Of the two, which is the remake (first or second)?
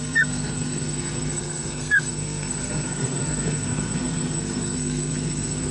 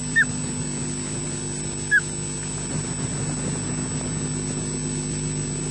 first